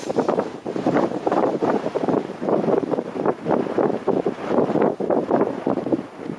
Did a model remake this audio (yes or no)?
yes